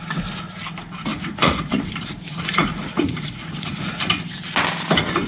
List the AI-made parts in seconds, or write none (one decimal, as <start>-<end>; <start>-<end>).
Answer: 1.1-1.8; 2.3-4.1